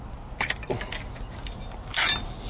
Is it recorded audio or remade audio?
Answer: recorded